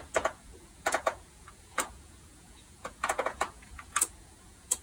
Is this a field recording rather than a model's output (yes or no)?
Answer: no